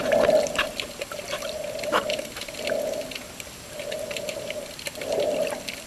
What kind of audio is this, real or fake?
real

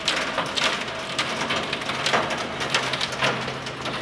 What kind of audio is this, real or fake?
real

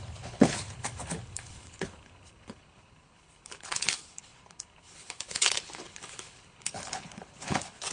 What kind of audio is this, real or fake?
fake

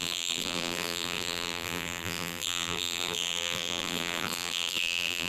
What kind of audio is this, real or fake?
fake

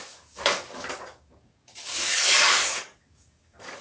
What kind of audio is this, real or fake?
fake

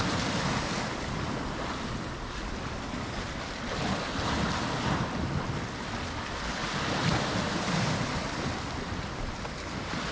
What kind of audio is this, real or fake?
real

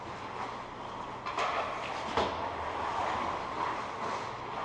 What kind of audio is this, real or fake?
real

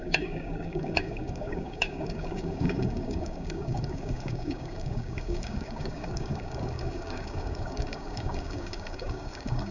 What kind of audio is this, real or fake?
fake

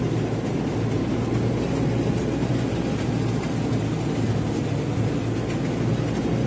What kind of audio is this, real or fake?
real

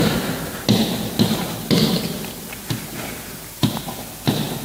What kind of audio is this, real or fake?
real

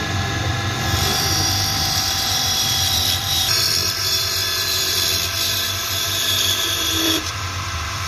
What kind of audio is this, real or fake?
fake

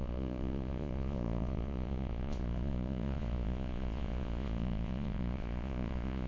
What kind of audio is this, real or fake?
fake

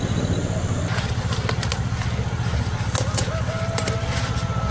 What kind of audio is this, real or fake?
real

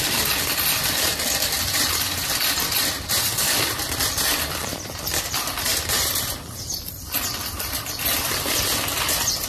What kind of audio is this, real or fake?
fake